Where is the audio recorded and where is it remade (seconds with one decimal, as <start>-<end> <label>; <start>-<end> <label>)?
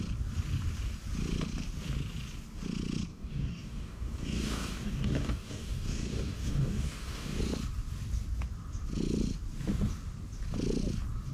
0.0-3.1 recorded; 3.1-7.4 remade; 7.4-11.3 recorded